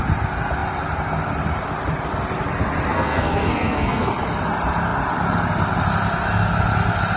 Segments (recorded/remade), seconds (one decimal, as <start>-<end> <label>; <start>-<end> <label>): 0.0-2.9 recorded; 2.9-4.1 remade; 4.1-7.2 recorded